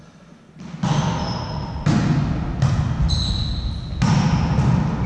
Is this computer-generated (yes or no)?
no